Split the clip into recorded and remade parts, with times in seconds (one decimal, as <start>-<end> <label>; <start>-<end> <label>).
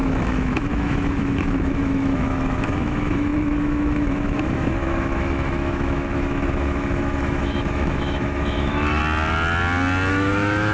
0.0-9.0 remade; 9.0-10.1 recorded; 10.1-10.7 remade